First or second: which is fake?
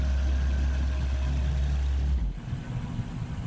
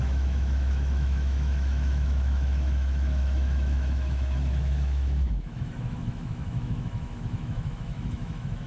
second